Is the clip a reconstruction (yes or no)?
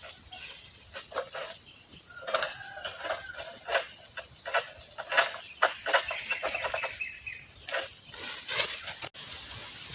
no